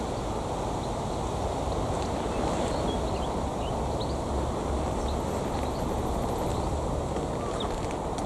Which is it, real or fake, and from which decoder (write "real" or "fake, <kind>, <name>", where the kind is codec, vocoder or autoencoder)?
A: real